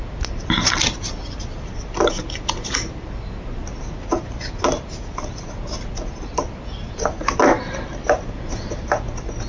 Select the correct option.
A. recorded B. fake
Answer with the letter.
A